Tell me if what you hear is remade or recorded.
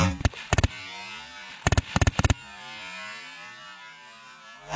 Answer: recorded